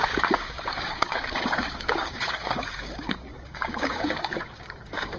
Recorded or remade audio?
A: remade